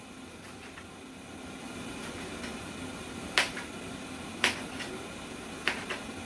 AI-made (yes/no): no